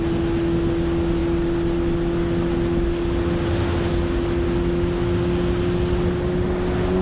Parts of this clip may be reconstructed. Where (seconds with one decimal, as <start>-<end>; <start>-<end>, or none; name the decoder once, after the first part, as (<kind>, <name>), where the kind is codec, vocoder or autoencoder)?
none